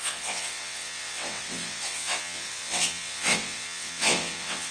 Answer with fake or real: fake